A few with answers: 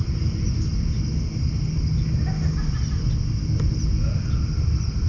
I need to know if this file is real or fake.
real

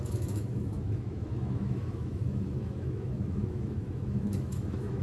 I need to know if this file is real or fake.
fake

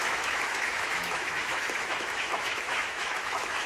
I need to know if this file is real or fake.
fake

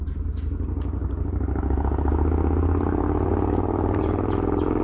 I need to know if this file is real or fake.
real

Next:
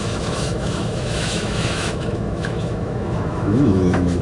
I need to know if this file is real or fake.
fake